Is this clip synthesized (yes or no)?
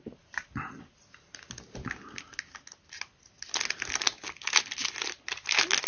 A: no